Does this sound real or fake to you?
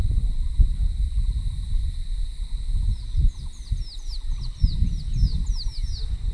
real